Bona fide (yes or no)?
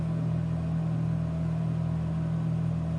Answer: yes